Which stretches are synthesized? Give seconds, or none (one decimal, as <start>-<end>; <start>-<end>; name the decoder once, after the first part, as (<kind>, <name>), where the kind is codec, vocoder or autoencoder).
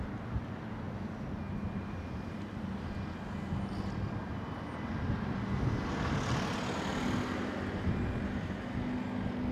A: 1.5-2.7 (vocoder, BigVGAN v2)